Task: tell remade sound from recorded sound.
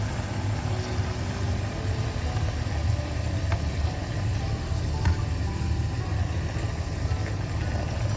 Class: recorded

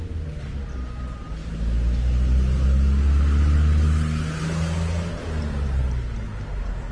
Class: recorded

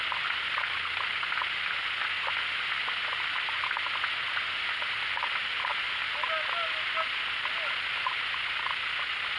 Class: recorded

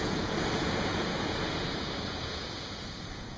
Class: remade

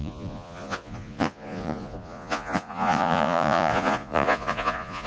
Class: remade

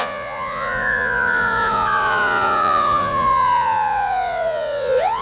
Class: remade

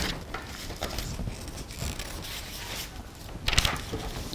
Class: recorded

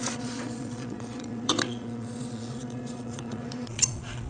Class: remade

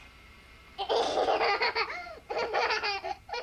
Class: recorded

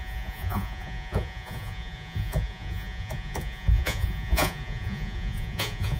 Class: remade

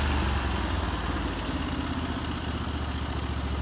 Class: recorded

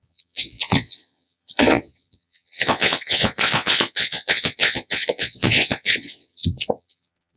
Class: remade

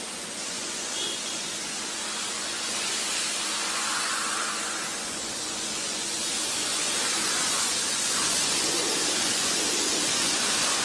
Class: remade